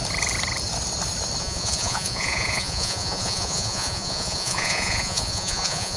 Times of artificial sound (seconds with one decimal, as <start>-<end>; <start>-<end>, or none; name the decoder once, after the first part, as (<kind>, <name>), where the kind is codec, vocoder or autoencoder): 1.4-6.0 (vocoder, Vocos)